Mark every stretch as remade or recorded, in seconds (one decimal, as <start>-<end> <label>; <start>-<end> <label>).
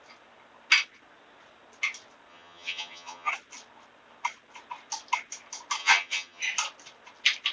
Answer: 0.0-2.3 recorded; 2.3-3.3 remade; 3.3-5.8 recorded; 5.8-6.4 remade; 6.4-7.5 recorded